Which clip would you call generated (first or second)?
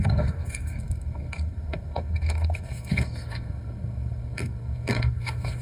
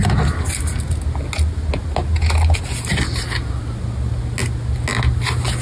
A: first